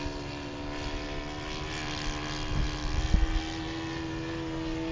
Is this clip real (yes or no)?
yes